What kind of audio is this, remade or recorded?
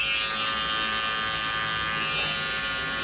recorded